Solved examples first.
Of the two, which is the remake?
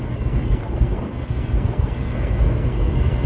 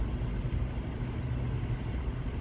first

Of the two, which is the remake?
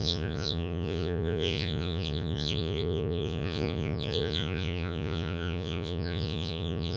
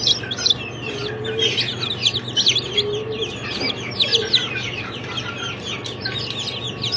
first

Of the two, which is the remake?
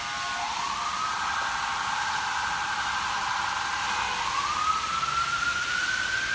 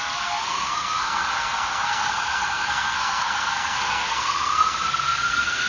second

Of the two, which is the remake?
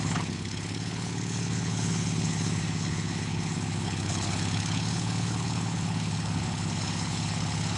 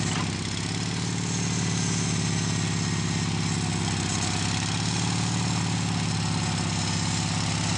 first